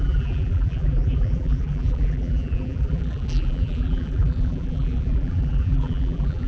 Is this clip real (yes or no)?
no